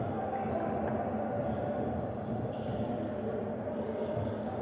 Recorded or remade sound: recorded